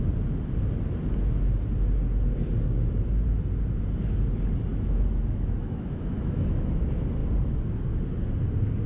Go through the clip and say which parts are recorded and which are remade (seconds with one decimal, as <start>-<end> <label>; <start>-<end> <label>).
0.0-4.7 recorded; 4.7-6.8 remade; 6.8-8.9 recorded